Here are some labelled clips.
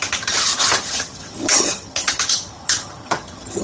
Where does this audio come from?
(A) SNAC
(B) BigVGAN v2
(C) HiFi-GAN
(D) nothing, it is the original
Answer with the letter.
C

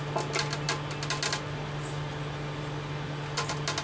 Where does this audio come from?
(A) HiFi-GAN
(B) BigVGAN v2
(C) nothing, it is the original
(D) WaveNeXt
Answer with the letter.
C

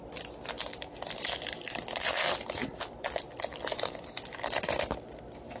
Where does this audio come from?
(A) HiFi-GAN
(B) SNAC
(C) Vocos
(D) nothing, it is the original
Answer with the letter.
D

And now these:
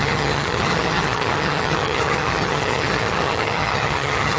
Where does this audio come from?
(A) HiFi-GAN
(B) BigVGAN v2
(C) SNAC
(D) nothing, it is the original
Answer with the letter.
A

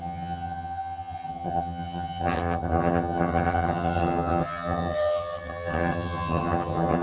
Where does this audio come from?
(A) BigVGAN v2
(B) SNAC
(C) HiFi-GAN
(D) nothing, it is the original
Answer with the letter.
C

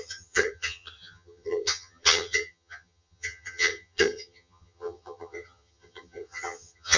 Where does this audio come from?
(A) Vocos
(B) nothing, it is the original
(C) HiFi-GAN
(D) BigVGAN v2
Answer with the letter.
C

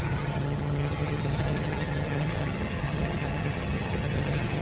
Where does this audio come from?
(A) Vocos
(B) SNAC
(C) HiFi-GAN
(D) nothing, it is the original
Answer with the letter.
C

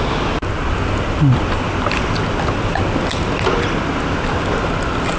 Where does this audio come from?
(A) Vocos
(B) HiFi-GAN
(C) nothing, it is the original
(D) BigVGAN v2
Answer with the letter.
C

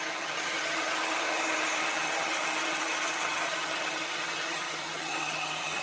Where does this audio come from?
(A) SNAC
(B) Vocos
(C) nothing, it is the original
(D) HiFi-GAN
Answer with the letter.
D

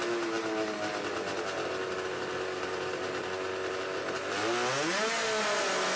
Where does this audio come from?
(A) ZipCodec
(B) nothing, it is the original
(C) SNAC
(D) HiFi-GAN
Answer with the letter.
B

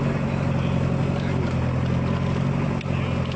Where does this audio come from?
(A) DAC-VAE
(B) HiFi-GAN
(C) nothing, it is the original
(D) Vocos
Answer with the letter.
C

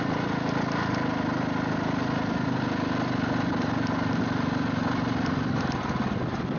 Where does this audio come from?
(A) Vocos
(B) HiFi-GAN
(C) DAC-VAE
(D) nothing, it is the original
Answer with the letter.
D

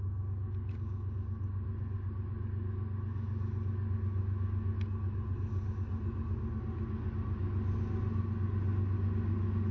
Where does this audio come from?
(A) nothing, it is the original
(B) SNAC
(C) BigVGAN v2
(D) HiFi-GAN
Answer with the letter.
A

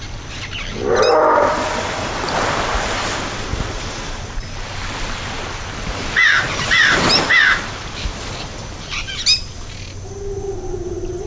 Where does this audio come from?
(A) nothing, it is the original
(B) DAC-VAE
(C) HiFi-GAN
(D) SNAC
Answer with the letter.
A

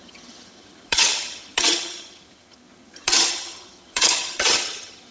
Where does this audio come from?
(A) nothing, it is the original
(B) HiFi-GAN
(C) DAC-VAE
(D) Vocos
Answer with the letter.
B